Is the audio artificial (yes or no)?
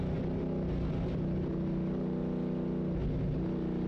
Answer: no